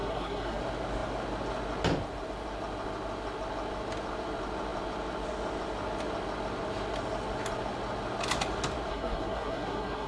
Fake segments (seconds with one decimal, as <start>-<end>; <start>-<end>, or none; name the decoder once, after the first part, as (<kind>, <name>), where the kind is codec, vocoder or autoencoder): 0.0-0.6 (codec, SNAC); 8.9-10.1